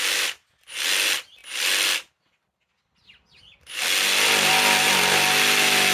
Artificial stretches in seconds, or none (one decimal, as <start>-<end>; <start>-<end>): none